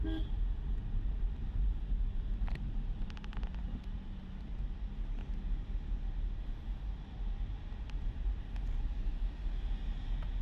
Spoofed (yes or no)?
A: no